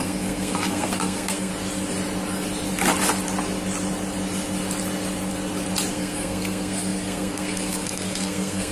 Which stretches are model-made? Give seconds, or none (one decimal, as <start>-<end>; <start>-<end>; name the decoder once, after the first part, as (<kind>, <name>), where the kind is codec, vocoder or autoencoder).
0.0-1.5 (codec, SNAC); 5.9-8.7